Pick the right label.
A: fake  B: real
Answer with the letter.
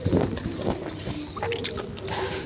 B